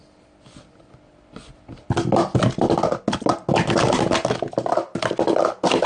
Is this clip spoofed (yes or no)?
no